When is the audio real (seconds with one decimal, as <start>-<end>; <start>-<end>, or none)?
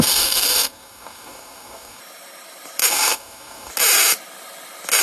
2.0-2.9; 3.7-5.0